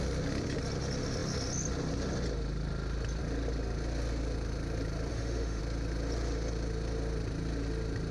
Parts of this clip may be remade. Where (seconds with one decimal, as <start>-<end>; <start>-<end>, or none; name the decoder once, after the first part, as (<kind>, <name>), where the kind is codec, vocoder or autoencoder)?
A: 5.1-5.6 (autoencoder, DAC-VAE)

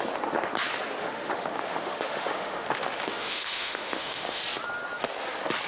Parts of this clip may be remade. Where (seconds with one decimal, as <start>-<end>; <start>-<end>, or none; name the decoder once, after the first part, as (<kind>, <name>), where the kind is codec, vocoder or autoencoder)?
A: 1.0-4.4 (autoencoder, DAC-VAE)

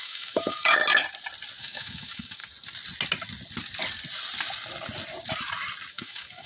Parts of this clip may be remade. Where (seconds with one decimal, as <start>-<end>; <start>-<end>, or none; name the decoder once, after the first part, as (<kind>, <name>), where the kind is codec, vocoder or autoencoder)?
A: 0.0-0.8 (autoencoder, DAC-VAE); 1.6-2.4; 5.9-6.5

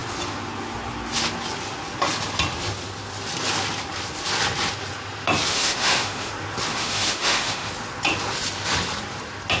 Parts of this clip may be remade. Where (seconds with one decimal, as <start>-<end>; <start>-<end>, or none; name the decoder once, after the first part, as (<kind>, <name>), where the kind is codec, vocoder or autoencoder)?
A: 5.5-6.3 (autoencoder, DAC-VAE); 6.7-7.7

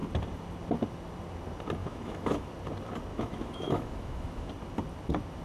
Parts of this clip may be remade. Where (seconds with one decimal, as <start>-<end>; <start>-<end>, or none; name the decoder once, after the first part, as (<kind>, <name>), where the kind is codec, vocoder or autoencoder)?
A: 1.8-2.5 (autoencoder, DAC-VAE); 3.1-4.5